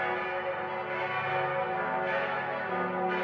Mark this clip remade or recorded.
recorded